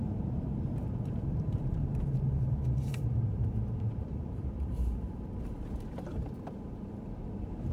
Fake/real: fake